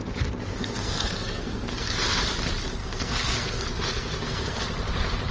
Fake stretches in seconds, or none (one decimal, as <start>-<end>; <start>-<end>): 0.5-2.2; 2.8-4.6